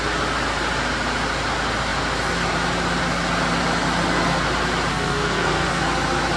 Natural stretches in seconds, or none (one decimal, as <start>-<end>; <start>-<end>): 0.0-4.9; 5.8-6.4